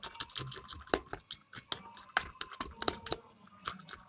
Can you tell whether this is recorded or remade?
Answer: recorded